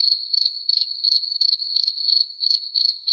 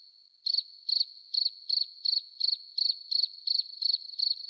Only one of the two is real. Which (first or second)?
second